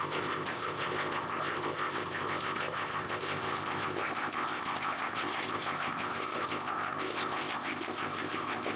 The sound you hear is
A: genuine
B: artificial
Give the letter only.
B